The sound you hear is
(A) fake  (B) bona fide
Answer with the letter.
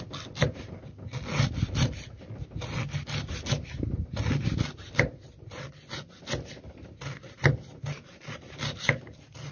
B